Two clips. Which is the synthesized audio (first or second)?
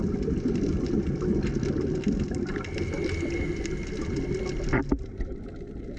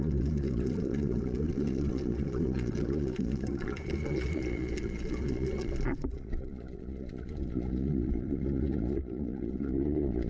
second